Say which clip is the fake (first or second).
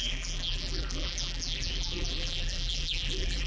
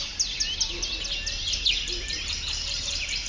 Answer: first